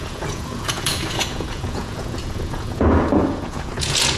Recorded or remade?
remade